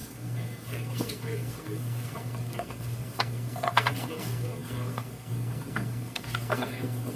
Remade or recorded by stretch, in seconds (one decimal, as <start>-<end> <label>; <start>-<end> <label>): 0.0-7.2 remade